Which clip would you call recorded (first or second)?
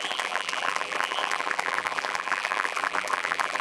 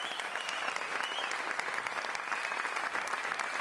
second